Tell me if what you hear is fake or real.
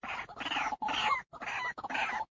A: real